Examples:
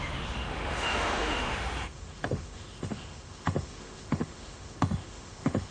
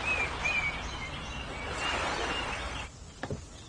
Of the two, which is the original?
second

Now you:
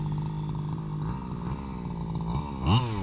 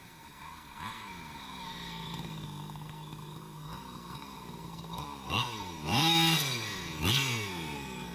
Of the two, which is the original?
first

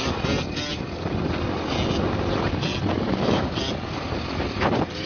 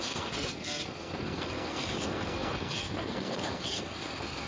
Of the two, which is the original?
first